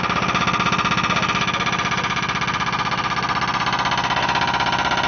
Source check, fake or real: real